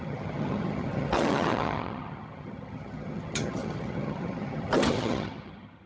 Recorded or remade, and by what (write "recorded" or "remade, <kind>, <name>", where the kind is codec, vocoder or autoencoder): remade, vocoder, HiFi-GAN